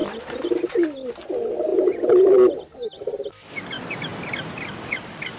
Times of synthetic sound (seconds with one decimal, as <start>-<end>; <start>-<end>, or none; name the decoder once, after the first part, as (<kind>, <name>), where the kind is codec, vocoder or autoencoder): none